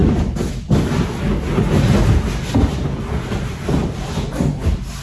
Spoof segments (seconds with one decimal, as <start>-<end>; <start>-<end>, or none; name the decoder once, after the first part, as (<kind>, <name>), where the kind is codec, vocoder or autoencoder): none